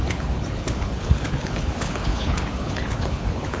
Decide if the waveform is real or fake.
fake